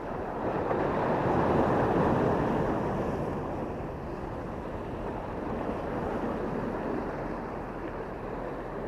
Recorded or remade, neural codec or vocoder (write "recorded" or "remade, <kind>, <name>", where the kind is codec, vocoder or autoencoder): recorded